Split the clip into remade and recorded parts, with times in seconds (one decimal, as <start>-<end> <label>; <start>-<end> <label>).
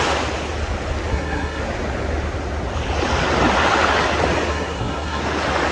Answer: 0.0-1.1 recorded; 1.1-1.6 remade; 1.6-4.5 recorded; 4.5-5.2 remade; 5.2-5.7 recorded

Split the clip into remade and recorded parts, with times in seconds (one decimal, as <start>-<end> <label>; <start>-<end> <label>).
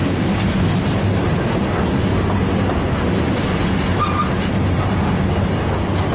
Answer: 0.0-6.1 recorded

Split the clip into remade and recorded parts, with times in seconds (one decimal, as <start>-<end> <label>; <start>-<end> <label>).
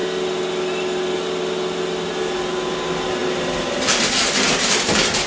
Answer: 0.0-5.3 recorded